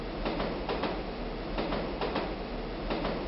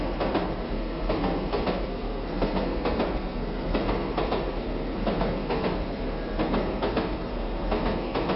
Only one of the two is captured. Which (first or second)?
first